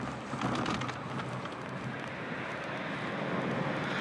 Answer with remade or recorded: recorded